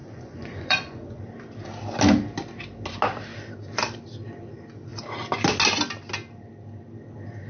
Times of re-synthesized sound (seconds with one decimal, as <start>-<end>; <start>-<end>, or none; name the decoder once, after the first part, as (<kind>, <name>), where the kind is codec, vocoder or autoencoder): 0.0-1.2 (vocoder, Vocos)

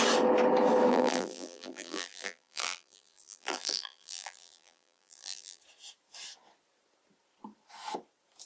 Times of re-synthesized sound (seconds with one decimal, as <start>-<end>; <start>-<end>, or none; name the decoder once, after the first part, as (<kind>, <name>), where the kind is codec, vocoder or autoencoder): 0.9-5.6 (vocoder, BigVGAN v2)

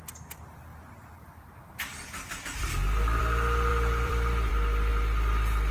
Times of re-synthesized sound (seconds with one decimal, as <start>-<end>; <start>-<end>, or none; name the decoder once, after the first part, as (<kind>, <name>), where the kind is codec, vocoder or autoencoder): 3.7-4.5 (vocoder, BigVGAN v2)